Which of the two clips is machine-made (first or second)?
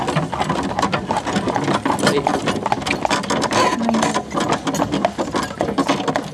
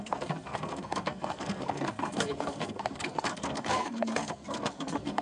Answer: second